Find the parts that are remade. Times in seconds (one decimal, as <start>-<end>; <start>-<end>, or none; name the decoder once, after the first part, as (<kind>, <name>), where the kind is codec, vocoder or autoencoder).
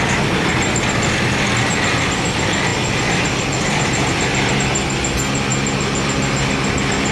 2.7-4.5 (vocoder, BigVGAN v2); 5.5-6.2